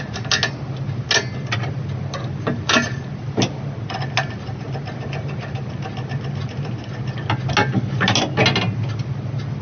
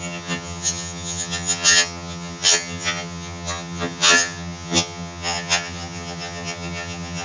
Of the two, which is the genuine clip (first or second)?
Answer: first